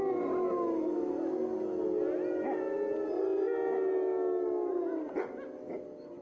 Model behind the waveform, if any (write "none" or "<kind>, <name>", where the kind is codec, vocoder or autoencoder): none